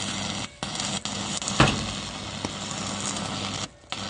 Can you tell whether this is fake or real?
real